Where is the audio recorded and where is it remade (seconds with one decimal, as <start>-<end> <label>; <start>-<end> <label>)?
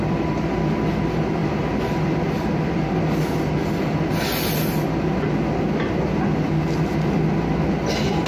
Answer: 0.0-1.4 recorded; 1.4-2.2 remade; 2.2-8.3 recorded